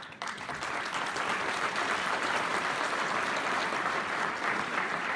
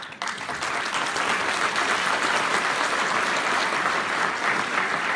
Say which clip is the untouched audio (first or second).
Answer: second